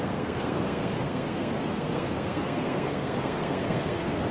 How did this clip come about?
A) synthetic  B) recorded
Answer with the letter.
A